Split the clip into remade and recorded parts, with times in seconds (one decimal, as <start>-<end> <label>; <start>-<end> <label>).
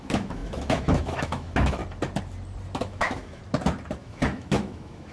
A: 0.0-1.8 remade; 1.8-2.8 recorded; 2.8-3.4 remade; 3.4-4.0 recorded; 4.0-5.1 remade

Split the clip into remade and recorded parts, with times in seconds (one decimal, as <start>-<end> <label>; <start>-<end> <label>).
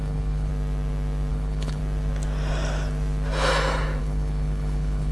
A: 0.0-0.5 remade; 0.5-1.3 recorded; 1.3-1.8 remade; 1.8-4.0 recorded; 4.0-5.1 remade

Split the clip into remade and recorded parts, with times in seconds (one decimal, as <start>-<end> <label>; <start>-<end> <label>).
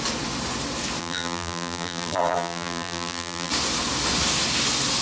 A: 0.0-1.0 recorded; 1.0-3.5 remade; 3.5-5.0 recorded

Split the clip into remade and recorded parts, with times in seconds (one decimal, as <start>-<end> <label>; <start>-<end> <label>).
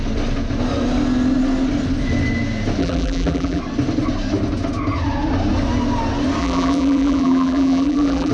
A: 0.0-2.8 recorded; 2.8-3.6 remade; 3.6-6.4 recorded; 6.4-8.3 remade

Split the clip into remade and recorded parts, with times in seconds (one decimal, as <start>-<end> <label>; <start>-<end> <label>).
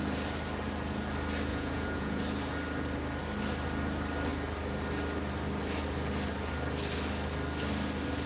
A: 0.0-1.5 recorded; 1.5-2.2 remade; 2.2-8.3 recorded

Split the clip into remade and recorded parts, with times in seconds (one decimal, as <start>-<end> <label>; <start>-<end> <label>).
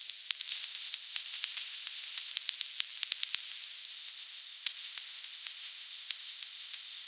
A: 0.0-0.5 recorded; 0.5-2.3 remade; 2.3-3.9 recorded; 3.9-7.1 remade